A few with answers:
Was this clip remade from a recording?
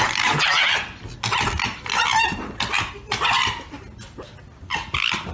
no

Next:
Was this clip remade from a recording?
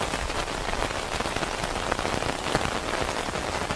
no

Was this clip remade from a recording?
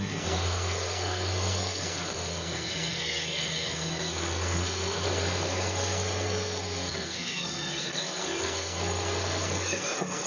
yes